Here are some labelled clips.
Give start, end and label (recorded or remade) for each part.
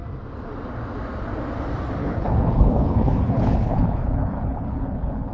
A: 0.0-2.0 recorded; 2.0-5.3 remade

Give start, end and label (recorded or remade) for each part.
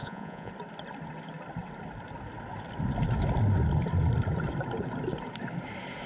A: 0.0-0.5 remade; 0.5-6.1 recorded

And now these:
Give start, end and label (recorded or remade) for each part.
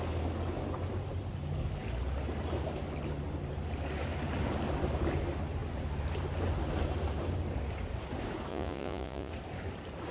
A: 0.0-8.5 recorded; 8.5-9.3 remade; 9.3-10.1 recorded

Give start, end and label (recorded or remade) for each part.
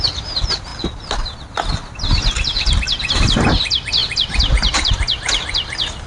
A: 0.0-6.1 recorded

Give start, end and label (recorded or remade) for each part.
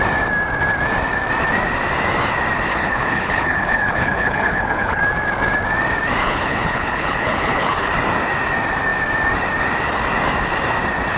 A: 0.0-2.7 recorded; 2.7-5.0 remade; 5.0-6.2 recorded; 6.2-7.9 remade; 7.9-11.2 recorded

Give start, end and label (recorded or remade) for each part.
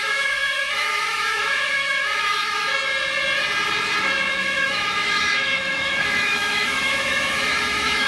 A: 0.0-2.7 remade; 2.7-4.3 recorded; 4.3-8.1 remade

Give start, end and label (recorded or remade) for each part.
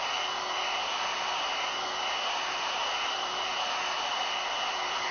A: 0.0-2.8 recorded; 2.8-3.5 remade; 3.5-5.1 recorded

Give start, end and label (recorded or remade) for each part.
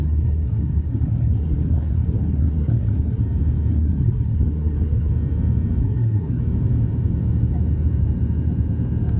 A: 0.0-3.2 remade; 3.2-3.7 recorded; 3.7-5.1 remade; 5.1-5.8 recorded; 5.8-6.4 remade; 6.4-9.2 recorded